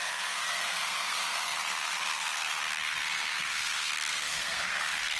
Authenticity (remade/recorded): remade